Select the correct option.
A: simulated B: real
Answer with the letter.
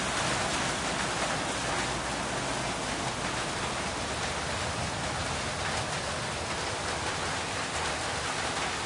B